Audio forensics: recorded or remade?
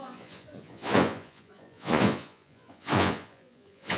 remade